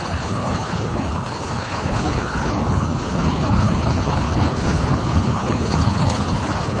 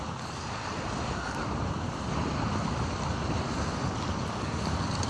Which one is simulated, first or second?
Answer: first